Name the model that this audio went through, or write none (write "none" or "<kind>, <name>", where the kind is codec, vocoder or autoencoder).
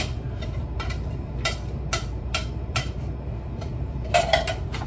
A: vocoder, BigVGAN v2